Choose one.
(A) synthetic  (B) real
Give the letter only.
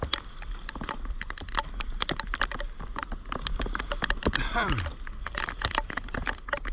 B